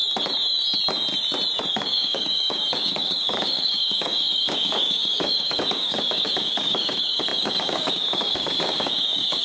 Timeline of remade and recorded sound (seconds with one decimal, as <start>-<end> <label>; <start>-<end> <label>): 0.0-1.7 recorded; 1.7-9.4 remade